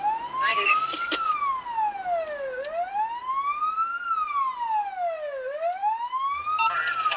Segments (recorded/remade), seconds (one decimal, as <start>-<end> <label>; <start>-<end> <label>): 0.0-0.5 recorded; 0.5-1.3 remade; 1.3-7.2 recorded